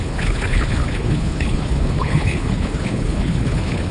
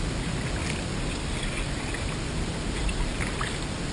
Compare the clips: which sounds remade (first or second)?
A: first